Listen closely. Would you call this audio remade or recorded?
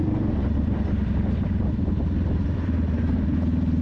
remade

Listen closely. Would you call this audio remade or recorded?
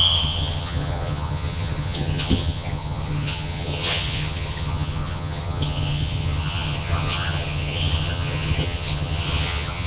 remade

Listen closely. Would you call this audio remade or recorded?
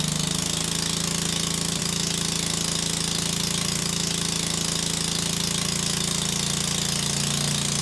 recorded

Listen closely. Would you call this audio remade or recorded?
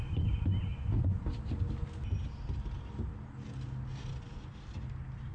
recorded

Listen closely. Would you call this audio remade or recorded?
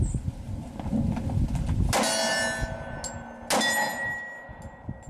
recorded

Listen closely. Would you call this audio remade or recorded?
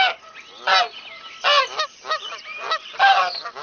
recorded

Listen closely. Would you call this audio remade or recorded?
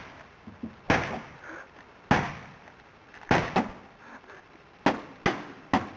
recorded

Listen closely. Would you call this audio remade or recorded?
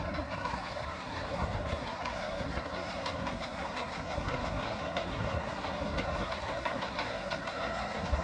remade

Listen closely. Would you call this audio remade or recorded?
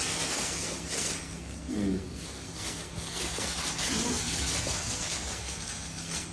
remade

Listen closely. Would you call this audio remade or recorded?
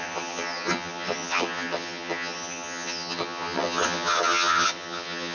remade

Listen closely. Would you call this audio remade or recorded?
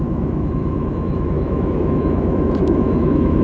remade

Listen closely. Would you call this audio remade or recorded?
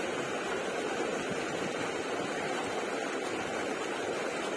recorded